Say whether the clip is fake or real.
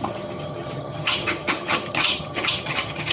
fake